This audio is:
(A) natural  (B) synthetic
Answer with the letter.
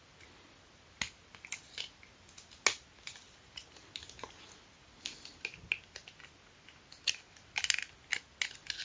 A